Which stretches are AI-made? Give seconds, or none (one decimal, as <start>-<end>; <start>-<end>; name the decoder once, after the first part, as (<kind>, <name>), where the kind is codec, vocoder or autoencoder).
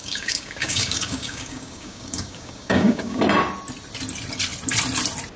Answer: 0.0-3.2 (codec, DAC)